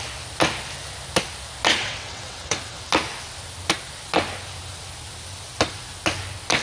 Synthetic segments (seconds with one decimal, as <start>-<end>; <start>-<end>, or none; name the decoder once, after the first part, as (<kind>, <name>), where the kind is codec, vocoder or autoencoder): 1.8-2.9 (vocoder, WaveNeXt)